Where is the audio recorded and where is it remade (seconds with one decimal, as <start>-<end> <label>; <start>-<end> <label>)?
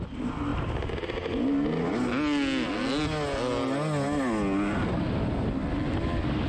0.0-6.5 recorded